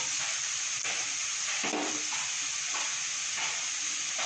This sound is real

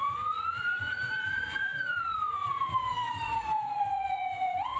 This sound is fake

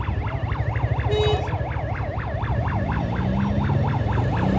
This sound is real